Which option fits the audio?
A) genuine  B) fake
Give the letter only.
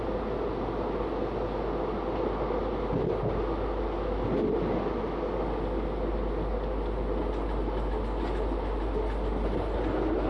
A